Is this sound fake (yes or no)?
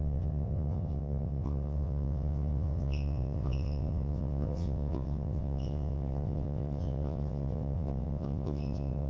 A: yes